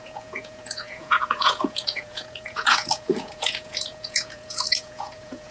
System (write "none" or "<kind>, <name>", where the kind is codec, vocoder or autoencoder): vocoder, Vocos